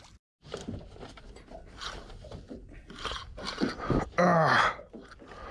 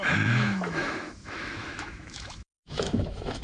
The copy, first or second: second